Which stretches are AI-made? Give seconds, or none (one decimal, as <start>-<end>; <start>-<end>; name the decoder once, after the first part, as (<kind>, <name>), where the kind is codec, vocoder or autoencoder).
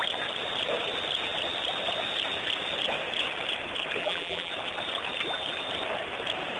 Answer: 4.0-4.5 (vocoder, BigVGAN v2)